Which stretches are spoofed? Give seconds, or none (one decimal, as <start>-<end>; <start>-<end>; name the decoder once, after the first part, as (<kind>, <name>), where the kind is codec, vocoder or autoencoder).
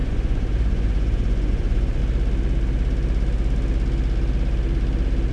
0.0-2.0 (vocoder, Vocos)